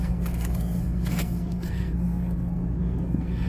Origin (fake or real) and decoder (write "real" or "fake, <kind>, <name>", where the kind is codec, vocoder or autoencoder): fake, codec, SNAC